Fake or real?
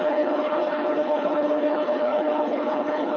fake